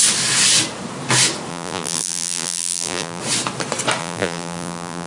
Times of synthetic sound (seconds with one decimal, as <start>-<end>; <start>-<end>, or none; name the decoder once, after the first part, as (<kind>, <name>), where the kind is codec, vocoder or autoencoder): 1.5-3.2 (vocoder, BigVGAN v2); 4.0-5.1